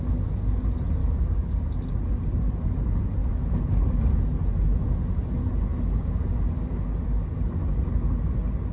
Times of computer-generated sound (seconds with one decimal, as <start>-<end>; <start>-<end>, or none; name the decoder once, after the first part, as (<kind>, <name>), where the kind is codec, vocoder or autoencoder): 1.0-1.6 (codec, DAC)